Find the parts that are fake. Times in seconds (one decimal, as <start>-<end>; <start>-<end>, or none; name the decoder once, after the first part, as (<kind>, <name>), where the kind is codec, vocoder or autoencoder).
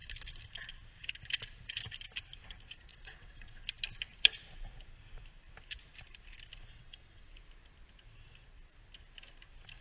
2.9-3.6 (vocoder, WaveNeXt); 6.7-7.3